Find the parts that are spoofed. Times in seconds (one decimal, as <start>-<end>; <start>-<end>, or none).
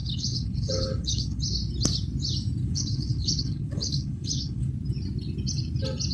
0.0-1.4; 2.6-4.7